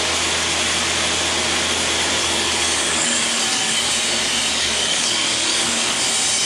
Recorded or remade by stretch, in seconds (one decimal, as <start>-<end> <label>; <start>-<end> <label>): 0.0-2.2 recorded; 2.2-3.9 remade; 3.9-4.5 recorded; 4.5-6.0 remade; 6.0-6.4 recorded